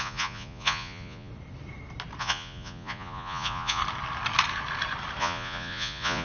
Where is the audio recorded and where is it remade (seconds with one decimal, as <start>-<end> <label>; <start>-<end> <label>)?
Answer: 0.0-1.3 remade; 1.3-2.2 recorded; 2.2-3.8 remade; 3.8-5.2 recorded; 5.2-6.2 remade